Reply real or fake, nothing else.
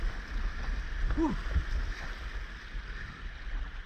real